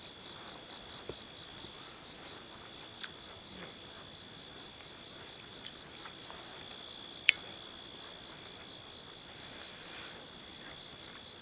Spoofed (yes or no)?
no